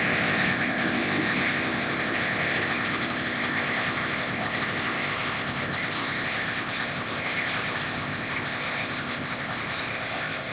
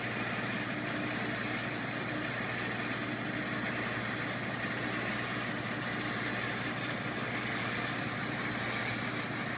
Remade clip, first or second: first